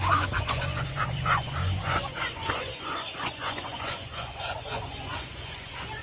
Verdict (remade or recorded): remade